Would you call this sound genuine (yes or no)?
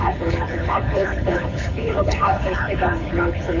no